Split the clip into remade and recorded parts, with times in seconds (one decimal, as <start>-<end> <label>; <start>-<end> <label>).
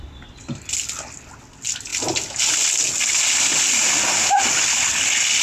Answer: 0.0-5.4 recorded